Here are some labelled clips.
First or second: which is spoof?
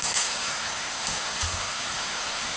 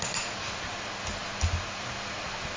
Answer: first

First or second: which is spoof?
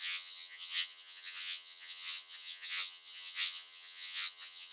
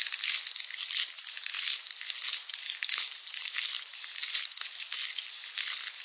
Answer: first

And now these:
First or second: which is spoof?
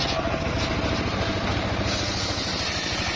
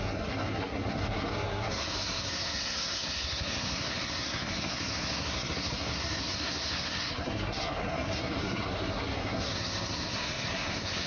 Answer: second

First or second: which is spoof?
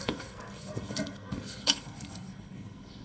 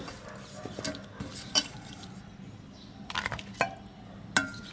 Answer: first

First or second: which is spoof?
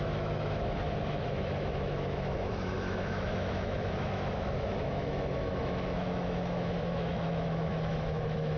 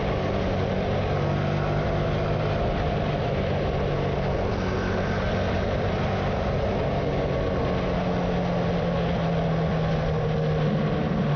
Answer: first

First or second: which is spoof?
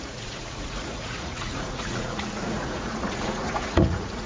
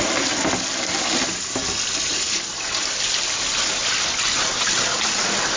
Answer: first